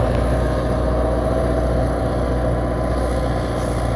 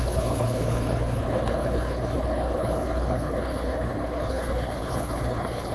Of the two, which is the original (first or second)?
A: first